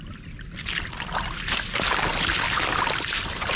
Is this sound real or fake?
real